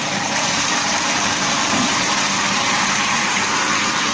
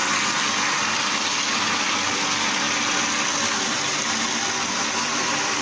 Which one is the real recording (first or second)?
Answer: second